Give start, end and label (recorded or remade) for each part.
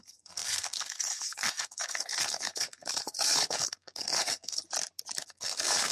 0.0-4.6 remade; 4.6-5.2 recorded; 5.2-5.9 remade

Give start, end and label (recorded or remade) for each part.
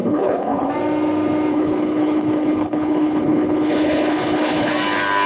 0.0-0.7 remade; 0.7-1.5 recorded; 1.5-4.7 remade; 4.7-5.3 recorded